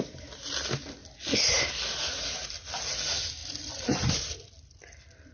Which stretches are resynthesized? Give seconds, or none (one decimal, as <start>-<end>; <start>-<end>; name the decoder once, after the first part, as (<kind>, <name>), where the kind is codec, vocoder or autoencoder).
none

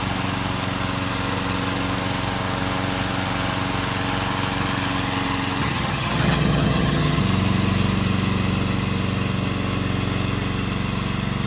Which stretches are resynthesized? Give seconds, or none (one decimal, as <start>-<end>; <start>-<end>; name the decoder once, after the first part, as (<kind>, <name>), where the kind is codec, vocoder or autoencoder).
5.6-7.2 (vocoder, HiFi-GAN)